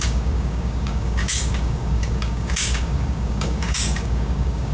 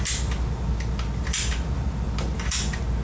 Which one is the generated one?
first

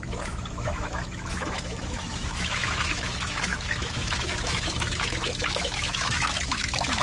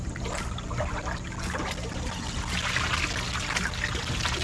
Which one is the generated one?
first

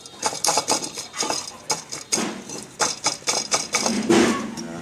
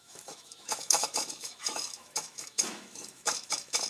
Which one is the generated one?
second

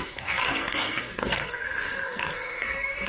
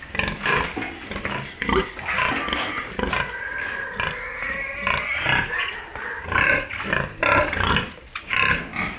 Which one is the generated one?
first